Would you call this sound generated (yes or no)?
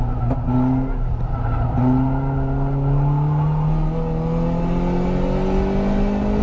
no